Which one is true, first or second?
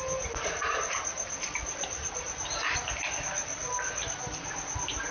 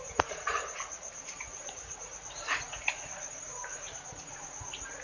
first